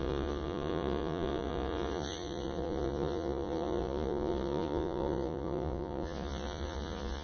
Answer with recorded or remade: remade